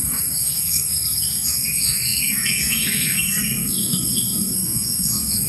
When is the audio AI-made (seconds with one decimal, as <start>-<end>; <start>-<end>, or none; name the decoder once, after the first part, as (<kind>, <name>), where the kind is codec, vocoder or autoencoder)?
0.0-5.5 (codec, SNAC)